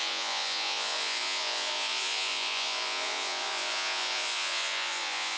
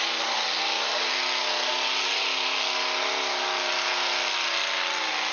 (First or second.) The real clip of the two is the second